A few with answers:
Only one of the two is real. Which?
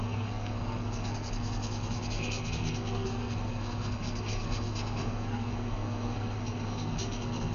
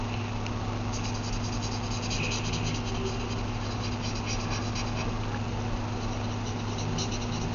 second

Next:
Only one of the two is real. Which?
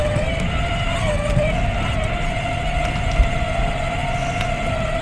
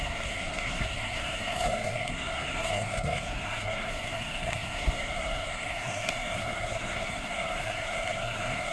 first